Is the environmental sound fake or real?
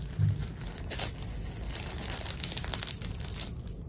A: real